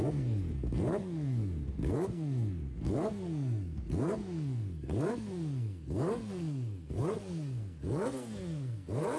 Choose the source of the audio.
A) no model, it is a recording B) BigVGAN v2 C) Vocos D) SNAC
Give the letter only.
D